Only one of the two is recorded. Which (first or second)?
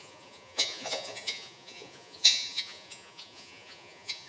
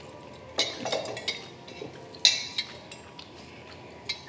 second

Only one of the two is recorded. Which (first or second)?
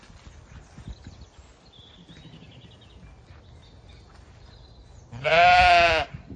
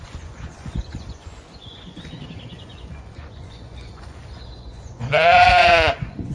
first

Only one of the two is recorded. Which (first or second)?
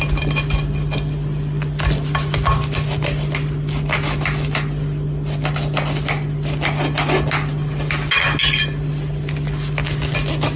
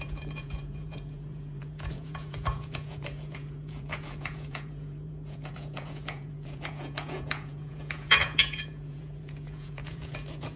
first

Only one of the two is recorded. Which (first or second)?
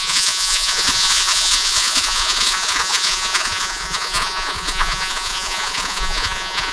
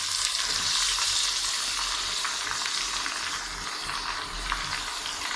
second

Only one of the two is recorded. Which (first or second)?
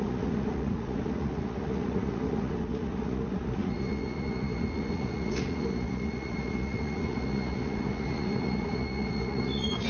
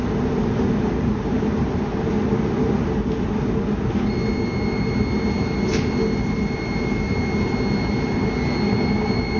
second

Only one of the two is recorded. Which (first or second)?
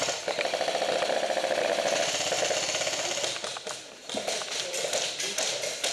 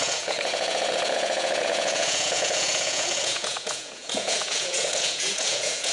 first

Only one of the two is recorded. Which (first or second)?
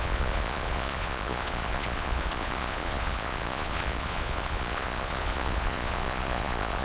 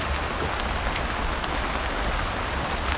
second